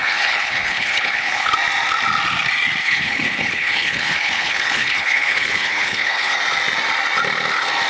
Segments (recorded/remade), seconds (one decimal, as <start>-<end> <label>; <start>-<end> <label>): 0.0-1.5 remade; 1.5-2.8 recorded; 2.8-6.4 remade; 6.4-7.9 recorded